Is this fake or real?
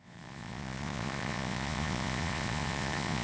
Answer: fake